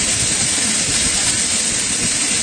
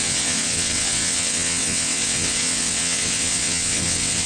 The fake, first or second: second